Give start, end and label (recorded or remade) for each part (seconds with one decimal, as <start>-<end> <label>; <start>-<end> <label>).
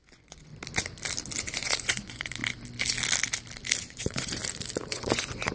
0.0-0.5 remade; 0.5-1.4 recorded; 1.4-2.4 remade; 2.4-3.8 recorded; 3.8-4.4 remade; 4.4-4.9 recorded; 4.9-5.5 remade